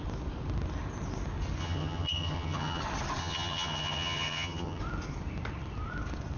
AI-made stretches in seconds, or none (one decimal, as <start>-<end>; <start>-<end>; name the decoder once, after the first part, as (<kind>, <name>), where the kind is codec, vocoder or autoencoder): 1.6-2.8 (vocoder, HiFi-GAN); 3.2-4.8